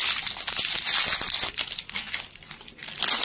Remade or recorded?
recorded